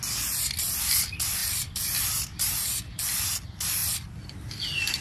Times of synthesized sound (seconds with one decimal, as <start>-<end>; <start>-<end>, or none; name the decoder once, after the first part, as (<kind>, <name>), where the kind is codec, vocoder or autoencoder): 1.4-3.0 (vocoder, BigVGAN v2); 3.8-5.0